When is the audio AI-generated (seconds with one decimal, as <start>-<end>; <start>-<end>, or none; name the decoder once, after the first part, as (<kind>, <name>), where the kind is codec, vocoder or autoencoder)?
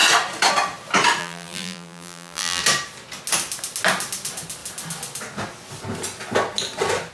1.2-2.6 (vocoder, BigVGAN v2)